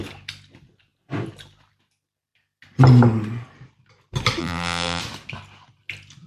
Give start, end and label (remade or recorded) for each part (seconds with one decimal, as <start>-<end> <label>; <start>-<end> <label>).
0.0-4.4 recorded; 4.4-5.0 remade; 5.0-6.3 recorded